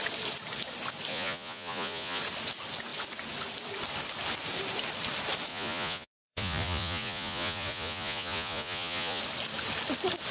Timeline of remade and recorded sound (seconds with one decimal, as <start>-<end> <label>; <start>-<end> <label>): 0.0-1.1 recorded; 1.1-2.2 remade; 2.2-5.5 recorded; 5.5-9.2 remade; 9.2-10.3 recorded